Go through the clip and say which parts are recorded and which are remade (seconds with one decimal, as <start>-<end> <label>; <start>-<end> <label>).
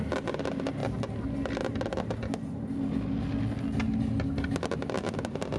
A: 0.0-5.6 recorded